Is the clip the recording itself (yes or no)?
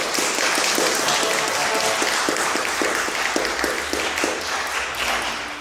yes